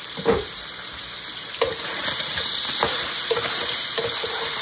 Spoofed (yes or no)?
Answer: yes